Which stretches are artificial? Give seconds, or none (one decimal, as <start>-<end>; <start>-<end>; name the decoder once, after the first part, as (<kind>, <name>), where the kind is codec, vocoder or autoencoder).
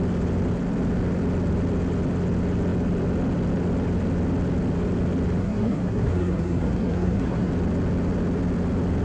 5.4-7.5 (codec, SNAC)